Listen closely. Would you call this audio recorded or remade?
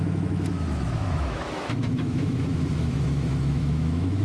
remade